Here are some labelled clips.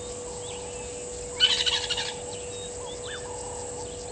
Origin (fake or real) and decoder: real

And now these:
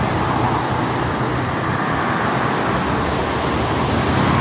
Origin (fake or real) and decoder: real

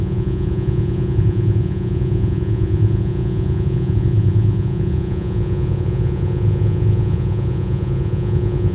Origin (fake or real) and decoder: fake, vocoder, Vocos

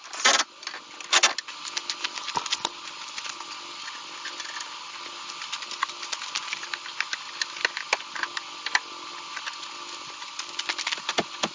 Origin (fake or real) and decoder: real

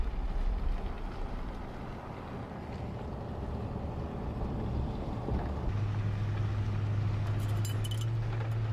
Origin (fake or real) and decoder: real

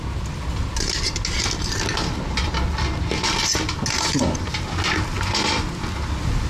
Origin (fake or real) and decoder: real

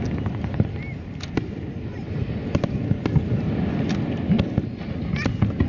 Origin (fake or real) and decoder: real